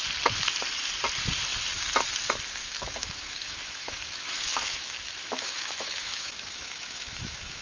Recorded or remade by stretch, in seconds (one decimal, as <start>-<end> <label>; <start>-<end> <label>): 0.0-2.6 recorded; 2.6-7.6 remade